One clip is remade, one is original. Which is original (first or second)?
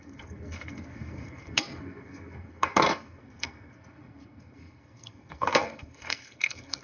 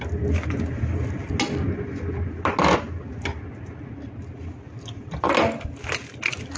second